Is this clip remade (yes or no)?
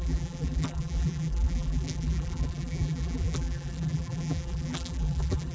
yes